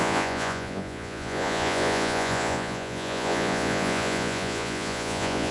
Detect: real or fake fake